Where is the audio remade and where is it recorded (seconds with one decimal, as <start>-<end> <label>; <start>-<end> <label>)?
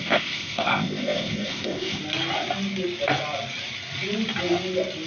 0.0-2.0 remade; 2.0-5.1 recorded